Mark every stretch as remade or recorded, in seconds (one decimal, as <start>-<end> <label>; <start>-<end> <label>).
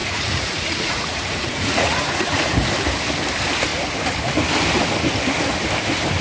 0.0-2.5 remade; 2.5-6.2 recorded